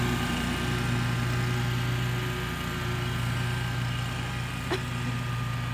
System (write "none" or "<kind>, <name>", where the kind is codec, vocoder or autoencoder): none